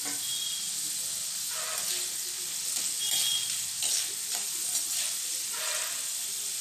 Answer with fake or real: real